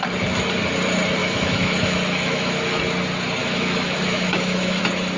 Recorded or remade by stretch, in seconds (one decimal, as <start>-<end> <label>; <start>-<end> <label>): 0.0-1.2 recorded; 1.2-2.8 remade; 2.8-3.4 recorded; 3.4-4.8 remade; 4.8-5.2 recorded